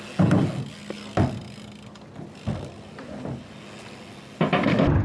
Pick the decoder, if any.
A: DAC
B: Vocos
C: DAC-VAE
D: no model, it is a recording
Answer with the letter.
D